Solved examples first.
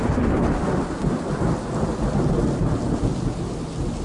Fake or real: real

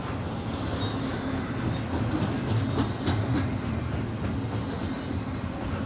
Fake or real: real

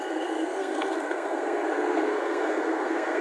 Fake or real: fake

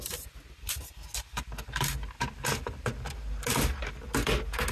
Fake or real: real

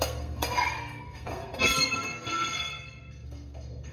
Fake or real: fake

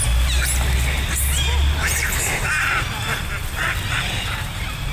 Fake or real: real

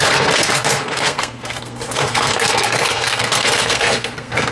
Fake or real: fake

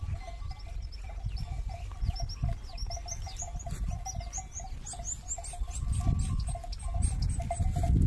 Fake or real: real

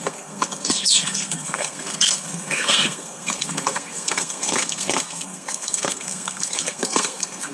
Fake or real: fake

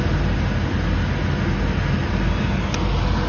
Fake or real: real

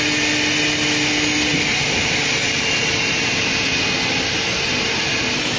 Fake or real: real